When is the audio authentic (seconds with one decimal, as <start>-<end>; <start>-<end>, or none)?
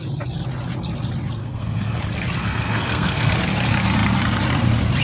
0.0-1.4; 2.0-2.4; 3.3-5.0